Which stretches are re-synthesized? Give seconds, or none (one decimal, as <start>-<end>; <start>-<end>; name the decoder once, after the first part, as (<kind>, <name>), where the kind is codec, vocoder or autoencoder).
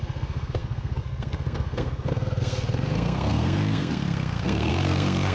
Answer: 0.0-5.3 (codec, SNAC)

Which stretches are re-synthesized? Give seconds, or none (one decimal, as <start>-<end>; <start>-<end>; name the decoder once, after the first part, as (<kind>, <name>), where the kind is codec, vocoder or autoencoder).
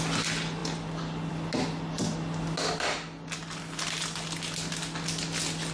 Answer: none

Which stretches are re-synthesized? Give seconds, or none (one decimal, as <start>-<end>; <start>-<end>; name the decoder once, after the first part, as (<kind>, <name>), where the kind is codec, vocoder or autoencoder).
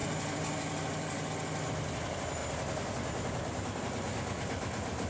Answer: none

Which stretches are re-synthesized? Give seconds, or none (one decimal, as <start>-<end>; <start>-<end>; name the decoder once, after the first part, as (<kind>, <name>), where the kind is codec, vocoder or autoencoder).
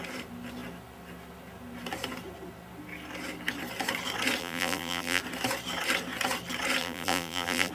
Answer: 4.4-5.2 (vocoder, BigVGAN v2); 6.8-7.7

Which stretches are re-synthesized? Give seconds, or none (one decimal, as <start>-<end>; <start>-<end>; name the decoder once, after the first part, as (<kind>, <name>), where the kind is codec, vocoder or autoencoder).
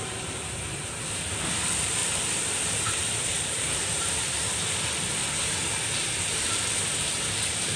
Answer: 0.0-5.2 (vocoder, BigVGAN v2); 6.3-7.8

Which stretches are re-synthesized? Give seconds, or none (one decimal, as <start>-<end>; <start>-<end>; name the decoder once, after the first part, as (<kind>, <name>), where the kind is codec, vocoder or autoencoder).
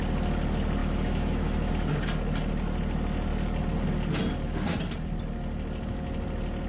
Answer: 0.8-1.7 (autoencoder, DAC-VAE)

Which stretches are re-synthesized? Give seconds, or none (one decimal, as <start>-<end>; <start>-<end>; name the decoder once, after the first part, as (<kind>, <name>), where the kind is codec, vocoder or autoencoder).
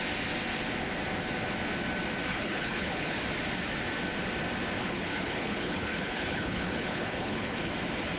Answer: 2.3-3.2 (codec, HILCodec); 4.8-7.7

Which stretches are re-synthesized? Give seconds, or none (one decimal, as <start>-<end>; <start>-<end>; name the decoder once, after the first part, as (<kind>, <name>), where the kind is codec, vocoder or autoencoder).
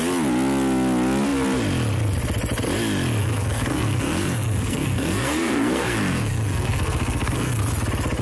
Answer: 3.2-7.6 (codec, SNAC)